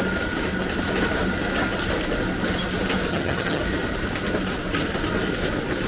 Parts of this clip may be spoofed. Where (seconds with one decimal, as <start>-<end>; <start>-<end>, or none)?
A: 3.1-3.6